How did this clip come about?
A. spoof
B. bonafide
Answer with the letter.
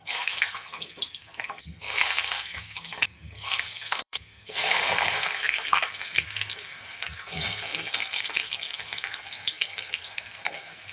A